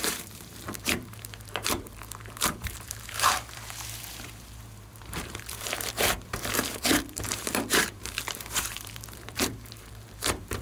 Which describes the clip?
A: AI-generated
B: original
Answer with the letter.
A